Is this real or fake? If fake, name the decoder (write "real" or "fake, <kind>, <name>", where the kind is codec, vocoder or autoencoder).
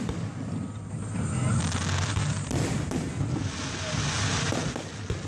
real